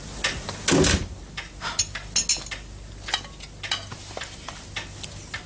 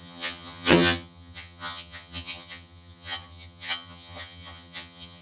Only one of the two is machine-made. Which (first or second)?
second